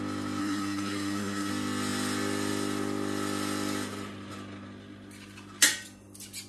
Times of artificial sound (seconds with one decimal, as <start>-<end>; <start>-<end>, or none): 0.4-1.5